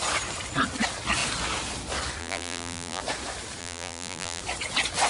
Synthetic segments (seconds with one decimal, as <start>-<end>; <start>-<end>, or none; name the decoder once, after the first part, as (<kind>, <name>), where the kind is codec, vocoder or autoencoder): 2.2-3.0 (vocoder, BigVGAN v2); 3.6-4.4